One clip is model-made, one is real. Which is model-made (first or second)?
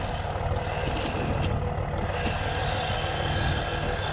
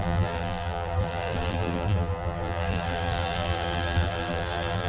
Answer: second